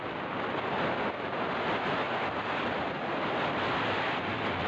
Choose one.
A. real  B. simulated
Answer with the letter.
A